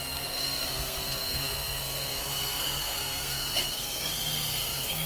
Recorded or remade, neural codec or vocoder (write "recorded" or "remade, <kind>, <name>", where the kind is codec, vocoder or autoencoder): remade, codec, SNAC